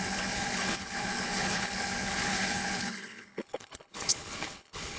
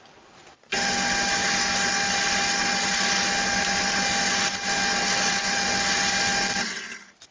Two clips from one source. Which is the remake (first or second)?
first